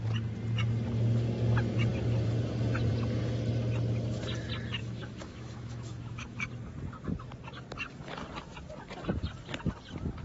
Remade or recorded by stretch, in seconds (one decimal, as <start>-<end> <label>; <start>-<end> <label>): 0.0-4.8 recorded; 4.8-6.5 remade; 6.5-10.2 recorded